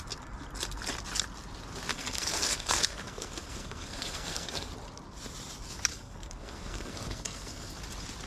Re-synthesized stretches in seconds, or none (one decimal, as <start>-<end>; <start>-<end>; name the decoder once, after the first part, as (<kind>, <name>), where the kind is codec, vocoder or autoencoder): 1.9-4.7 (codec, SNAC); 5.9-7.8